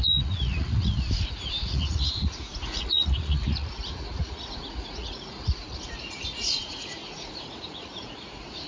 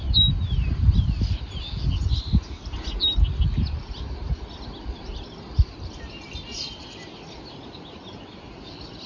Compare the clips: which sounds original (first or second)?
second